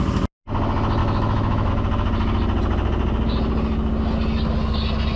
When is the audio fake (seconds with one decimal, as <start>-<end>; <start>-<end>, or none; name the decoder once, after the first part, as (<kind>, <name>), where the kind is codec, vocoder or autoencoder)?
1.0-1.7 (autoencoder, DAC-VAE)